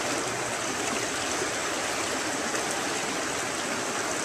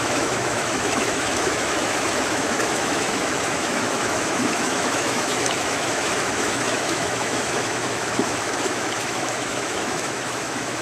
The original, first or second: first